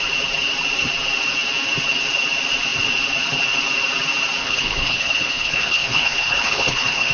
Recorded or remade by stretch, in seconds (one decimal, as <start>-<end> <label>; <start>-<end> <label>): 0.0-4.4 recorded; 4.4-7.1 remade